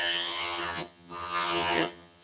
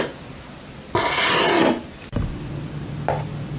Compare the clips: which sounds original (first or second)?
second